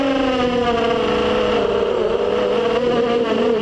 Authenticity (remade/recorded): recorded